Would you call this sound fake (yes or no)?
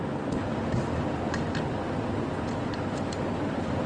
no